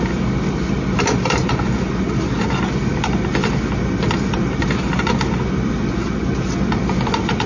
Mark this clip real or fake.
real